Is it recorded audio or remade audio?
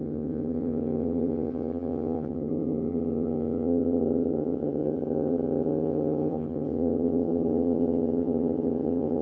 remade